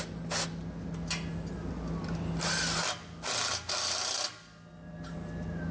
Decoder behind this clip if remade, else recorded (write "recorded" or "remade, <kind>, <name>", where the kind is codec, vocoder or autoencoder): recorded